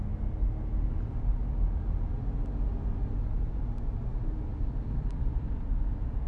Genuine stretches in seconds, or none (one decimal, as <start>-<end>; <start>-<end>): 0.0-1.3; 1.8-4.5; 5.1-6.3